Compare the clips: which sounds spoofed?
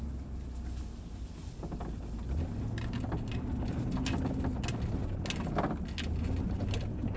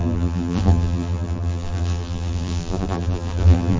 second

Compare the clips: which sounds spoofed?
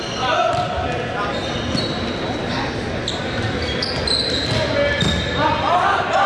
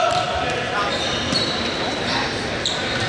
second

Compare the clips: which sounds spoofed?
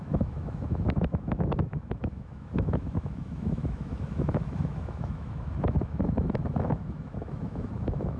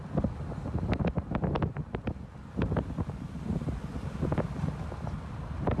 first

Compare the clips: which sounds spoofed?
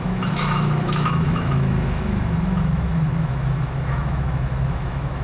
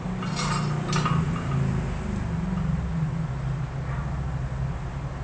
first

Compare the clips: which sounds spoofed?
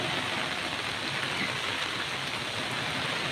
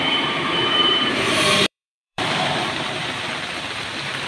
second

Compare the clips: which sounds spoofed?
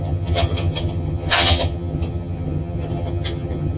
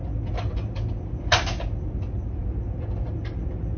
first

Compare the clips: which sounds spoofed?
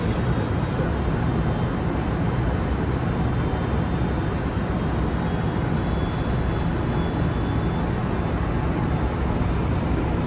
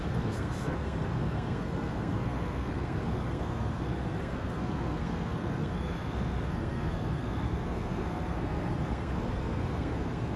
second